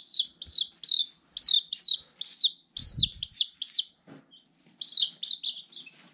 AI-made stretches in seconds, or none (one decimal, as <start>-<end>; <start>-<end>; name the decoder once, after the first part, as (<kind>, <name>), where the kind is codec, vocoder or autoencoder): 2.8-4.2 (vocoder, BigVGAN v2)